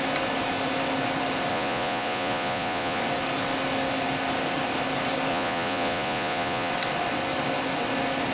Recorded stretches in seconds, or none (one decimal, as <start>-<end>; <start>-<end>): 0.0-1.5; 3.0-5.3; 6.7-8.3